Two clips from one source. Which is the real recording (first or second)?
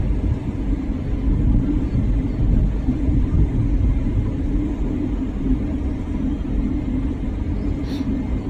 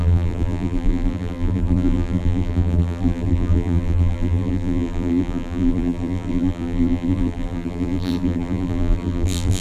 first